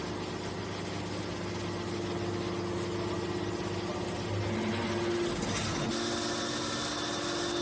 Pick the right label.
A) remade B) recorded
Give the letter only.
B